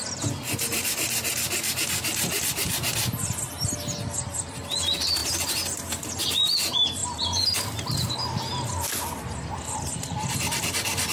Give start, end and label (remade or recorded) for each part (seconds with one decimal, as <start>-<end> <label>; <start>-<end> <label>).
0.0-11.1 recorded